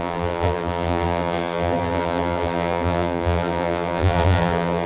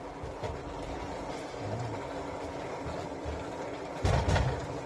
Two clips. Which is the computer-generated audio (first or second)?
first